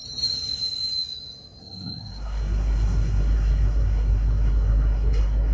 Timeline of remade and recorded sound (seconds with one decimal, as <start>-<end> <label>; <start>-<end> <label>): 0.0-1.6 recorded; 1.6-5.5 remade

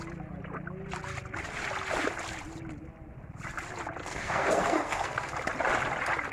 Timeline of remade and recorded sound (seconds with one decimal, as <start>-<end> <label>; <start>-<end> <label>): 0.0-4.0 recorded; 4.0-5.3 remade; 5.3-6.3 recorded

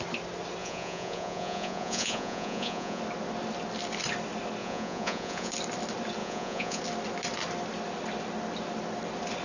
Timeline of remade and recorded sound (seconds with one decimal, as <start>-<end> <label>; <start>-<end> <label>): 0.0-0.6 recorded; 0.6-3.0 remade; 3.0-4.6 recorded; 4.6-5.5 remade; 5.5-6.2 recorded; 6.2-6.8 remade; 6.8-9.4 recorded

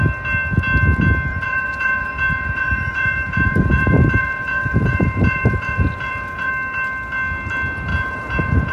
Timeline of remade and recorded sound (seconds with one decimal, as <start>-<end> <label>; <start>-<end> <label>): 0.0-1.3 recorded; 1.3-6.5 remade; 6.5-7.9 recorded; 7.9-8.7 remade

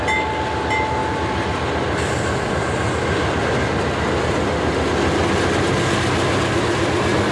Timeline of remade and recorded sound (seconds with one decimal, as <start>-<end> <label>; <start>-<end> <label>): 0.0-1.0 recorded; 1.0-3.5 remade; 3.5-7.3 recorded

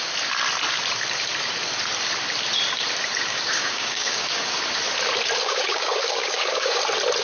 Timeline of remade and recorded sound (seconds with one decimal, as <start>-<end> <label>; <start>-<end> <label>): 0.0-3.3 recorded; 3.3-4.4 remade; 4.4-5.4 recorded; 5.4-6.8 remade; 6.8-7.2 recorded

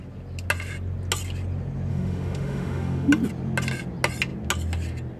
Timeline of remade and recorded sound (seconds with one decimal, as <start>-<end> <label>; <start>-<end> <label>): 0.0-1.9 recorded; 1.9-3.1 remade; 3.1-5.2 recorded

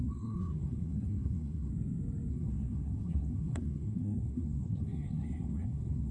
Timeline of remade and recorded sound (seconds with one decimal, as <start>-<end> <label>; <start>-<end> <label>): 0.0-1.7 remade; 1.7-2.3 recorded; 2.3-6.1 remade